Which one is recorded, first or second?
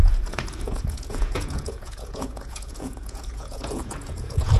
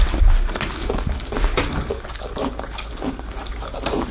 second